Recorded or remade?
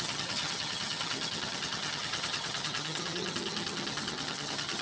remade